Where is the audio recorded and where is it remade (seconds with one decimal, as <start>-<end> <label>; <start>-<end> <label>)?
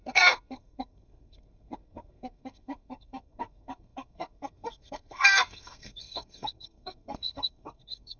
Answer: 0.0-8.2 remade